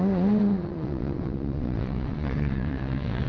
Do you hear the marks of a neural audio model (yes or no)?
yes